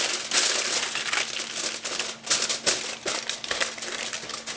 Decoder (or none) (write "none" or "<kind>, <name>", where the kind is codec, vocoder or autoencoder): none